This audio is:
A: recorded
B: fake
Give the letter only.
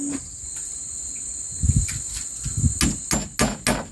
A